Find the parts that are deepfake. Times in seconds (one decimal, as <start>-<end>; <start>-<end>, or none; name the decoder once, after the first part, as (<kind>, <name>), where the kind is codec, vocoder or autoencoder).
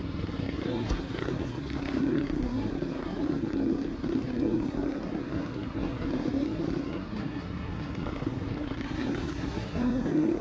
0.0-10.4 (codec, SNAC)